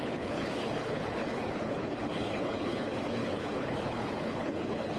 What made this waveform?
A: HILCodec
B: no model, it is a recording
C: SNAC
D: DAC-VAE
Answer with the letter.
A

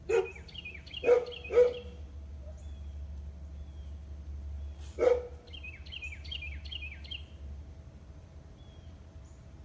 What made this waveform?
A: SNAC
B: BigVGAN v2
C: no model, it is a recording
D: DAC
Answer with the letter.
C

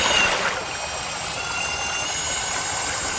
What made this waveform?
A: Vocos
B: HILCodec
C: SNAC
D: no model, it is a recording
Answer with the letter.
D